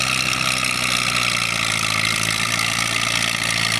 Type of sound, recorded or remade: recorded